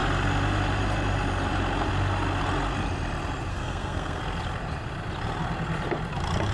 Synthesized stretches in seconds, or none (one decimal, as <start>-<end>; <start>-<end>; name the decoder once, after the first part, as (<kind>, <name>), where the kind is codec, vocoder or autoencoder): 3.5-4.2 (codec, SNAC)